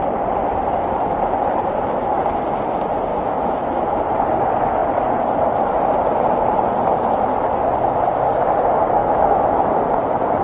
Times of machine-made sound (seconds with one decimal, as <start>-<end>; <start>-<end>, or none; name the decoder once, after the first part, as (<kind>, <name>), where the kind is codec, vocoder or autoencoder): 3.1-4.0 (autoencoder, DAC-VAE); 9.0-9.6